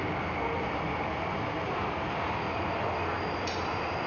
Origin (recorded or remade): recorded